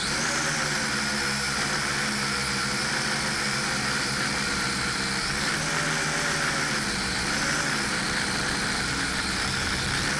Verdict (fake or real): real